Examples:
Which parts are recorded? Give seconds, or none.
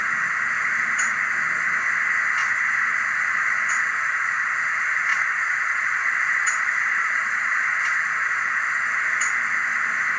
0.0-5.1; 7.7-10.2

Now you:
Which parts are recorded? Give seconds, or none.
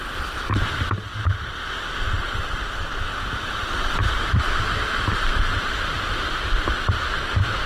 0.0-7.7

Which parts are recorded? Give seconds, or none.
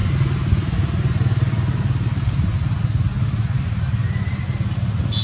0.0-5.2